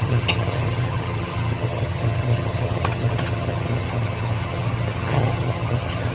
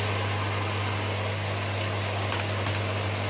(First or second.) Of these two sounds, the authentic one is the second